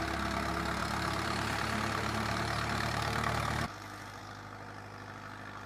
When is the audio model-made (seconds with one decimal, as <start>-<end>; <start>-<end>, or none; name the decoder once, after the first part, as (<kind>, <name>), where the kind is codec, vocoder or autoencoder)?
0.8-4.2 (vocoder, BigVGAN v2)